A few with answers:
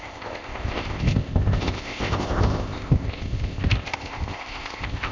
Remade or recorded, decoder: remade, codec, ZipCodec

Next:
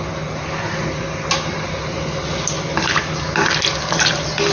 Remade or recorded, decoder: recorded